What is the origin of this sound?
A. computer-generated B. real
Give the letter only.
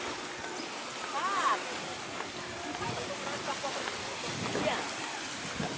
B